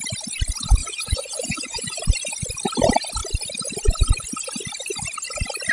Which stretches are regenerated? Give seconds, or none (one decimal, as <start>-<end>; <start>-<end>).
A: 0.8-2.0